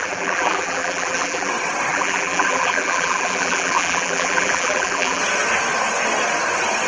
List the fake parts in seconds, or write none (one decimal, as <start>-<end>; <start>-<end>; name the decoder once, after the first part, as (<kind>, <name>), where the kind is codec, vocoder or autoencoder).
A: 0.0-1.5 (vocoder, BigVGAN v2); 1.9-5.2